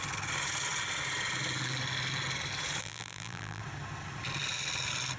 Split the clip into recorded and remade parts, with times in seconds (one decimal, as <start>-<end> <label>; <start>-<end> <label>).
0.0-2.8 recorded; 2.8-3.6 remade; 3.6-5.2 recorded